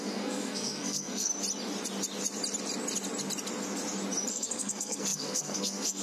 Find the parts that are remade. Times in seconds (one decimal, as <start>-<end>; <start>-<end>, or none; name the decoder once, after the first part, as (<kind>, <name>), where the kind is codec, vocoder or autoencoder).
0.0-1.3 (codec, SNAC); 4.3-6.0